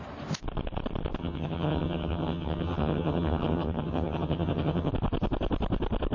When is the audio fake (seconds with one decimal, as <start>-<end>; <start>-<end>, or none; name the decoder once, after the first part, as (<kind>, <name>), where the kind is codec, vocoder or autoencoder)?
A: 1.2-4.9 (vocoder, HiFi-GAN)